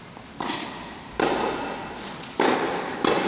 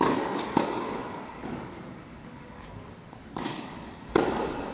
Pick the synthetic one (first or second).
second